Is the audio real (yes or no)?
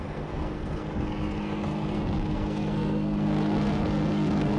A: no